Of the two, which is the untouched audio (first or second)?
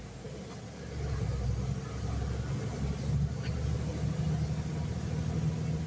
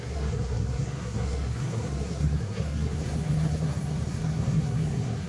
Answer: first